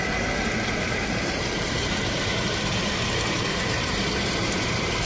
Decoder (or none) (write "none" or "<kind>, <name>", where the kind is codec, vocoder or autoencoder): vocoder, BigVGAN v2